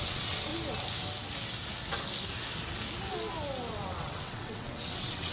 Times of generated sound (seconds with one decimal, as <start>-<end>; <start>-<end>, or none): 0.0-0.5; 3.7-5.3